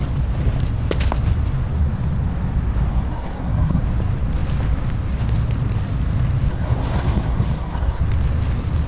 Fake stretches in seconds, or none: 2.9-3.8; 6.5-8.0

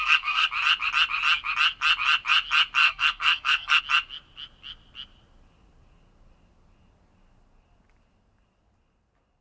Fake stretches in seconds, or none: 0.0-0.5; 2.8-3.8

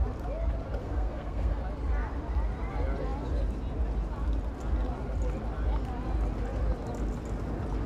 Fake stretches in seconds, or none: 0.8-1.6

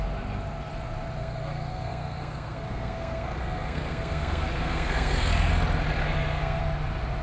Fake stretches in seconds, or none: 1.2-5.5; 6.0-6.6

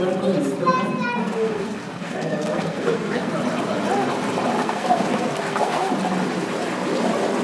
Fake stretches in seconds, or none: 1.2-3.3; 4.6-5.9

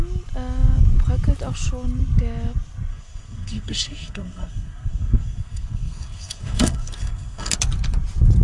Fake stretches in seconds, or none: 2.9-7.5